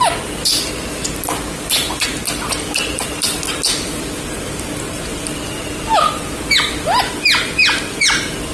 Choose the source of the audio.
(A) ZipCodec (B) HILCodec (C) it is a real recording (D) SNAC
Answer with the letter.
C